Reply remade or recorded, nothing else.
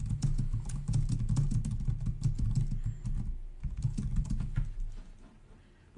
recorded